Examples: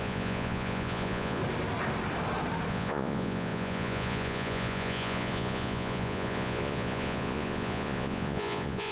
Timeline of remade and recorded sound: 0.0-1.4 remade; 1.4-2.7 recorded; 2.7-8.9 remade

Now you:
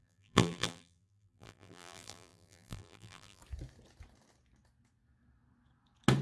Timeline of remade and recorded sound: 0.0-3.4 remade; 3.4-6.2 recorded

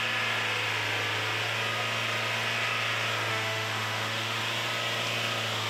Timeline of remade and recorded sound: 0.0-3.3 recorded; 3.3-4.4 remade; 4.4-5.7 recorded

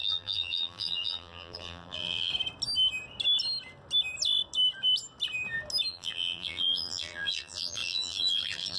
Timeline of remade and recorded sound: 0.0-2.3 remade; 2.3-5.9 recorded; 5.9-8.8 remade

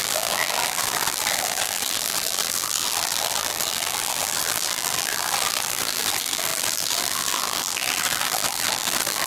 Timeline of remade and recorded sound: 0.0-9.3 remade

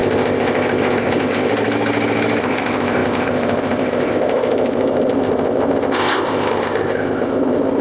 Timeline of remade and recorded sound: 0.0-1.5 remade; 1.5-2.4 recorded; 2.4-7.8 remade

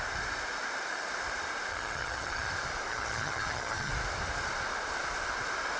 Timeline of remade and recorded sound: 0.0-1.7 recorded; 1.7-2.5 remade; 2.5-2.9 recorded; 2.9-3.9 remade; 3.9-5.8 recorded